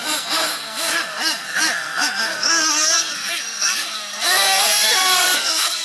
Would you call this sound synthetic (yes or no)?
yes